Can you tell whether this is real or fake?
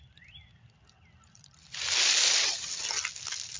real